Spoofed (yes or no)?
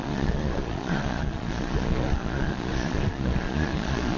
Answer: yes